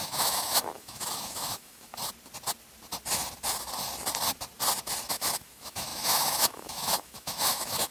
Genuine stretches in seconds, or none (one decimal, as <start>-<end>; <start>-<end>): 1.9-5.1